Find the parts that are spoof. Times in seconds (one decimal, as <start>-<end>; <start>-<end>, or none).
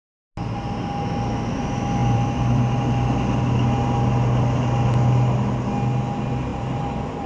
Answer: 2.0-2.6; 6.5-7.3